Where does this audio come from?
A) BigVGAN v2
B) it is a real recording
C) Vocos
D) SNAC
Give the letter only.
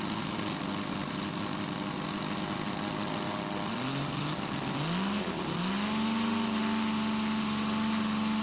B